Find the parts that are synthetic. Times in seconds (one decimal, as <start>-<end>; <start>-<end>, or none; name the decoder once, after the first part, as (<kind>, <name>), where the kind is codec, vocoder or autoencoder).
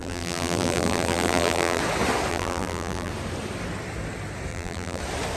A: 0.0-1.8 (vocoder, BigVGAN v2); 2.3-3.1; 4.5-5.0